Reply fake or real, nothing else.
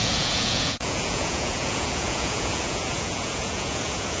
fake